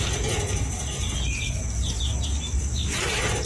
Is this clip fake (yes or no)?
no